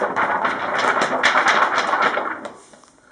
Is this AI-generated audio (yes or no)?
no